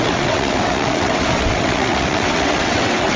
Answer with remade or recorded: remade